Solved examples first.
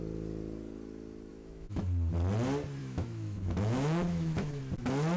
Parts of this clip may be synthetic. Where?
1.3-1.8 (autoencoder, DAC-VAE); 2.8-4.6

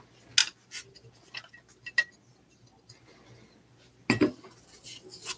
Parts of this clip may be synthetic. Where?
none

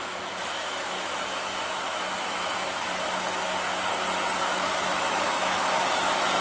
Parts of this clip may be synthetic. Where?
0.0-3.7 (autoencoder, DAC-VAE); 4.4-6.4